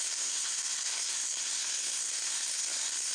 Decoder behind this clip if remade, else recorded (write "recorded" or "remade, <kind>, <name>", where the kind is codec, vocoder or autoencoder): remade, codec, SNAC